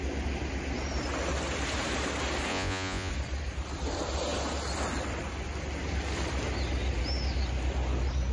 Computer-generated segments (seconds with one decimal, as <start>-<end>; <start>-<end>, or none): 2.5-3.1